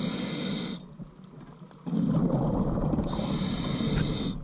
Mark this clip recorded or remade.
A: recorded